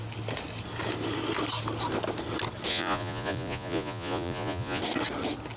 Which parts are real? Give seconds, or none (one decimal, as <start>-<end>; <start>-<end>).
0.0-2.7; 4.8-5.6